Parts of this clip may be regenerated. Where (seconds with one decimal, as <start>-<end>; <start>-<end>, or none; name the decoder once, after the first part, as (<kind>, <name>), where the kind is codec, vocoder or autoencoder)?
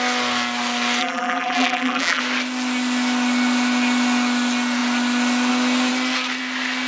1.0-2.2 (vocoder, BigVGAN v2)